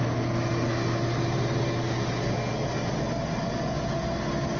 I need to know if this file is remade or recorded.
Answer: recorded